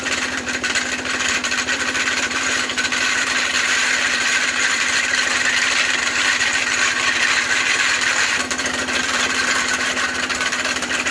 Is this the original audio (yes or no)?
no